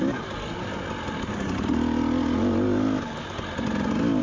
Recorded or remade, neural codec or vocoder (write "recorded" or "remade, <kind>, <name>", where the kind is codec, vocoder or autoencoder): recorded